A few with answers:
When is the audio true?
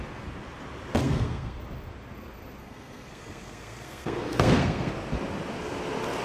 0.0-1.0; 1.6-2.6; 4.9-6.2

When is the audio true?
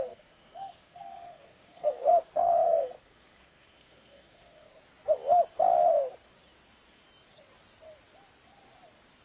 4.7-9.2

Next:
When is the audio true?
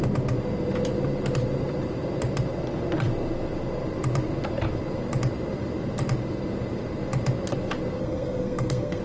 0.0-8.0